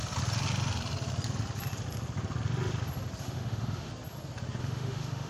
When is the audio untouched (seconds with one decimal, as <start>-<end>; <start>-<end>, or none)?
0.0-3.2; 3.9-4.6